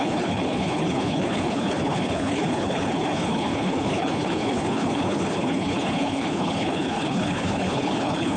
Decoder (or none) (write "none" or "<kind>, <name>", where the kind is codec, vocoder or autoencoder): codec, HILCodec